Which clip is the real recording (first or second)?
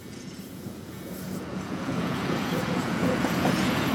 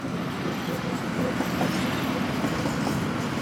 second